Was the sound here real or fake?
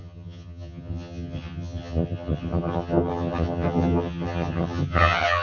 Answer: fake